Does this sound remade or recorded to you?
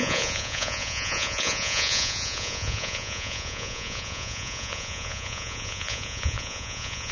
remade